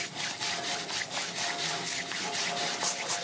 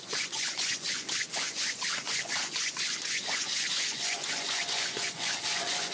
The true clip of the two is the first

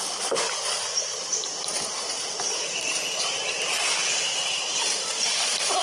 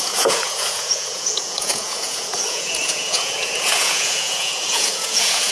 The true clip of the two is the first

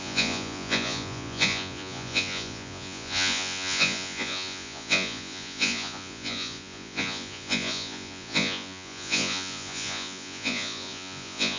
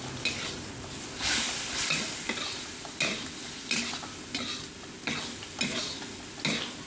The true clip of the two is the second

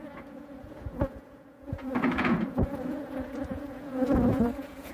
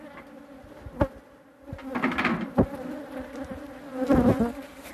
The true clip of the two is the second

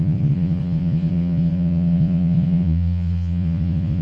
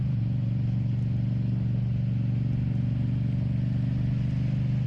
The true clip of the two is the second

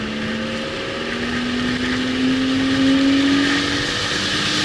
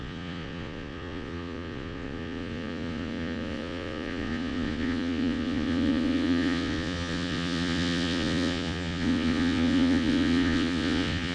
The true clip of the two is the first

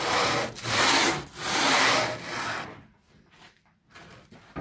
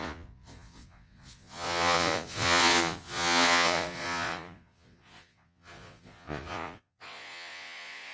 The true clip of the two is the first